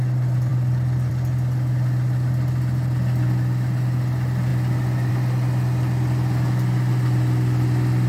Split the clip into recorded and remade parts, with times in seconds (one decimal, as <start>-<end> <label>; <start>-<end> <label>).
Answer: 0.0-8.1 recorded

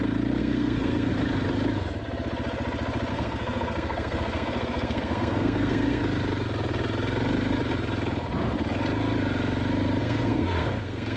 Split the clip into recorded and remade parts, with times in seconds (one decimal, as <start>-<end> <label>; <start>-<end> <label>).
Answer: 0.0-0.4 recorded; 0.4-1.1 remade; 1.1-3.1 recorded; 3.1-6.0 remade; 6.0-10.0 recorded; 10.0-11.2 remade

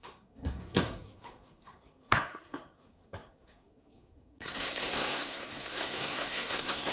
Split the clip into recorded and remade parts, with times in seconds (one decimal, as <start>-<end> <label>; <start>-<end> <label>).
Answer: 0.0-6.9 remade

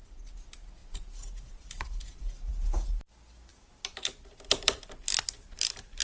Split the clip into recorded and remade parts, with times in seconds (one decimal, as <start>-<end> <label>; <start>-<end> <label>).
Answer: 0.0-3.5 recorded; 3.5-6.0 remade

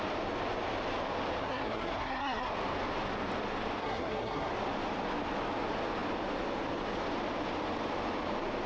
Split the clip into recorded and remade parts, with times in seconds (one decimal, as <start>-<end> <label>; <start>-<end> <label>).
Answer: 0.0-1.4 recorded; 1.4-2.5 remade; 2.5-3.8 recorded; 3.8-4.5 remade; 4.5-8.7 recorded

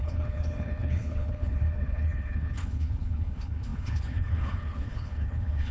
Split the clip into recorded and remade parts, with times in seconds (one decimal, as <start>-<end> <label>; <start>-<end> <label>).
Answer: 0.0-5.7 remade

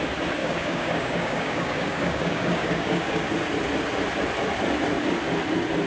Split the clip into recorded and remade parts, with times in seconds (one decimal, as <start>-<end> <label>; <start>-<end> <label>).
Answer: 0.0-0.4 recorded; 0.4-3.3 remade; 3.3-5.9 recorded